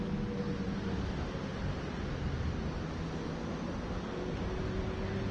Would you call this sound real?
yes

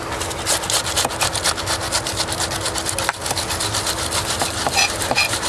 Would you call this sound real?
yes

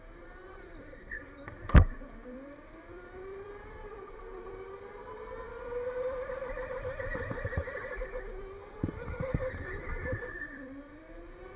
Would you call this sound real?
no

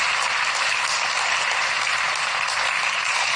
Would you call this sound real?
yes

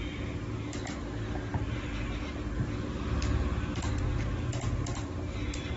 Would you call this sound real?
yes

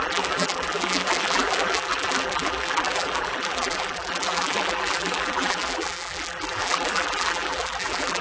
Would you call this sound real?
no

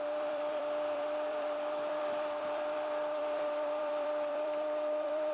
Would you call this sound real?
no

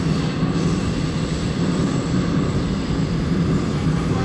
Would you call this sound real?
yes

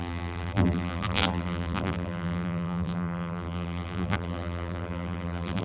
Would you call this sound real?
no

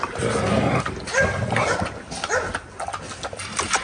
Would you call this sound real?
no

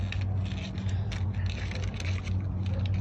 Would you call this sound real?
yes